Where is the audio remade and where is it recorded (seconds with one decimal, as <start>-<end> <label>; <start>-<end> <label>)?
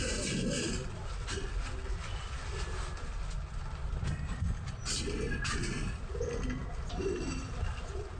0.0-8.2 recorded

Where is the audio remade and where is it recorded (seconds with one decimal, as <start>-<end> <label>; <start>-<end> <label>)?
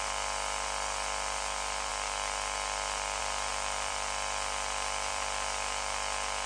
0.0-1.9 remade; 1.9-3.2 recorded; 3.2-6.5 remade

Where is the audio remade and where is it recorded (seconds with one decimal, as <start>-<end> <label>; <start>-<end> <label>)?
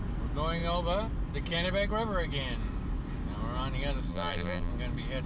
0.0-4.1 recorded; 4.1-4.7 remade; 4.7-5.3 recorded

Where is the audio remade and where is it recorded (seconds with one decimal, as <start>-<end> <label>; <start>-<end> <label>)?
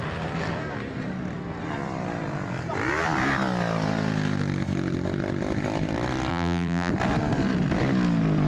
0.0-6.3 recorded; 6.3-6.9 remade; 6.9-8.5 recorded